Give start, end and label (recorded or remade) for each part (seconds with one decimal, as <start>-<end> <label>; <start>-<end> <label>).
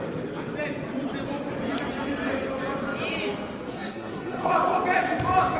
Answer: 0.0-3.7 recorded; 3.7-4.5 remade; 4.5-5.6 recorded